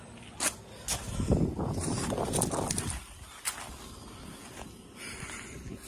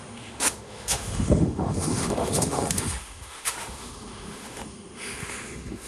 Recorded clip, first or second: first